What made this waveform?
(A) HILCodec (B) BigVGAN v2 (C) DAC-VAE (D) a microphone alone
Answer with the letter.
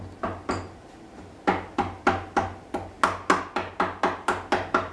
D